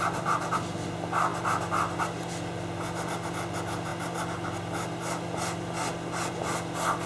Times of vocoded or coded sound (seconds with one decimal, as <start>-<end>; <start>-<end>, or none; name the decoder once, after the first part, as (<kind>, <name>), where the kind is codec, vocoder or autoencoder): none